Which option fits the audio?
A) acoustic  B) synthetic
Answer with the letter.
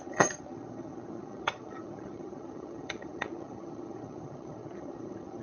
B